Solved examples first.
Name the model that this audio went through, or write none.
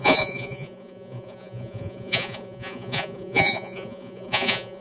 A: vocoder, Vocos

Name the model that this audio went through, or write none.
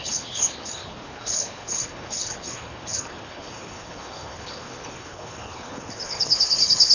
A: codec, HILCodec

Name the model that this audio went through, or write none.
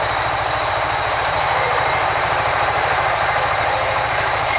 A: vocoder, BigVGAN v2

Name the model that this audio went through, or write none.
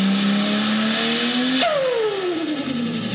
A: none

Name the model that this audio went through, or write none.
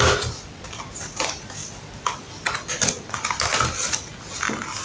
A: none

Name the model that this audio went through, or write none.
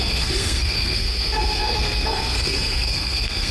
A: codec, SNAC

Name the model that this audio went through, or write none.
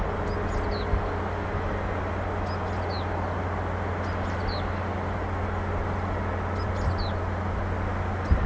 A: none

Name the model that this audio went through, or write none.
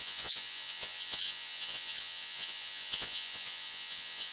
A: vocoder, Vocos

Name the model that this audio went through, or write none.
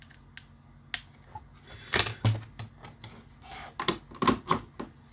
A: none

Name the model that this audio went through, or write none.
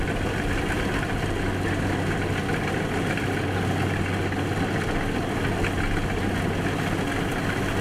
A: none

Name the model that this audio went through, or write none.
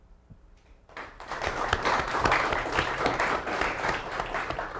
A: vocoder, BigVGAN v2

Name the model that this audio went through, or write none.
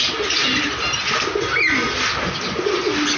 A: none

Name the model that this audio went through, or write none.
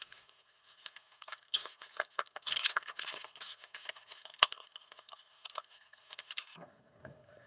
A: codec, SNAC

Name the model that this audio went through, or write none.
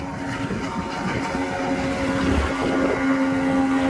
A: none